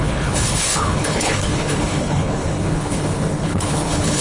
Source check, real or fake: fake